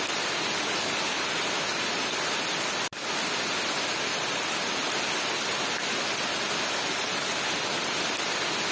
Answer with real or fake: real